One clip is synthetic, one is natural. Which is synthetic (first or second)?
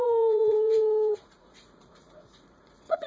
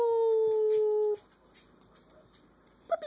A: first